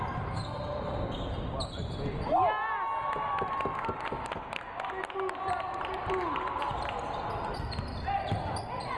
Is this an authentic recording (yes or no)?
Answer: yes